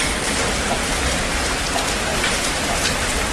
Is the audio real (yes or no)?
no